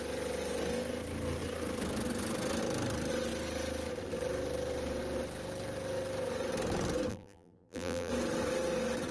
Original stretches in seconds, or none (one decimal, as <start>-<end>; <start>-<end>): 0.0-7.1; 8.1-9.1